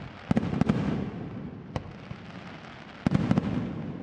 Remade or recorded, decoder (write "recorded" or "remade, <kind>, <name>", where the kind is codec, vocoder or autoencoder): recorded